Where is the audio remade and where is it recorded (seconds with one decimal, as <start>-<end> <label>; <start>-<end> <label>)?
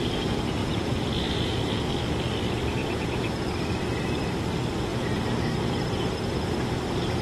0.0-0.6 recorded; 0.6-1.9 remade; 1.9-2.8 recorded; 2.8-3.3 remade; 3.3-7.2 recorded